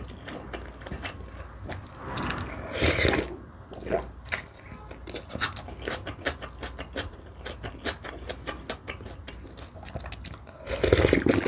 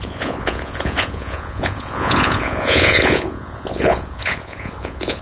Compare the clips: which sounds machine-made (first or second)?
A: second